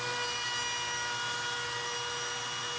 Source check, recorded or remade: recorded